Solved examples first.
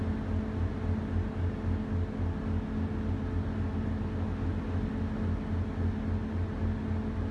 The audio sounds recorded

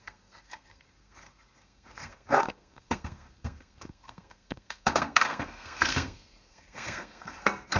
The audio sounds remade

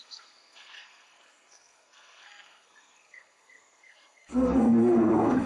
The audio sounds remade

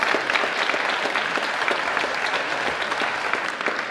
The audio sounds recorded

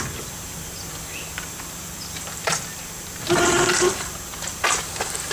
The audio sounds recorded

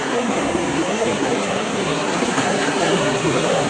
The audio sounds remade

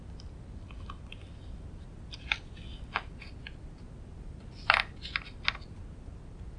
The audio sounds recorded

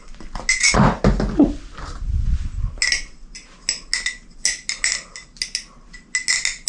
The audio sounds recorded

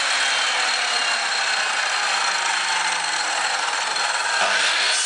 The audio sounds recorded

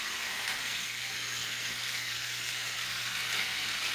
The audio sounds remade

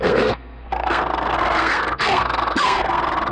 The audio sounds remade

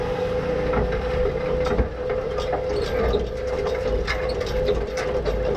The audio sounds recorded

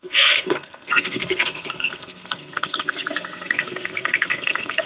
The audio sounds remade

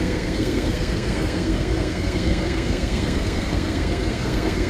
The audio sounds remade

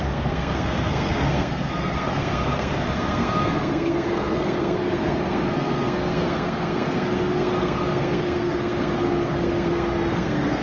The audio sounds remade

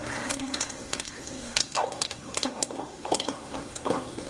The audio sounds remade